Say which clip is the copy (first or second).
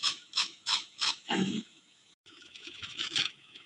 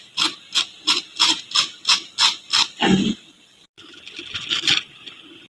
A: first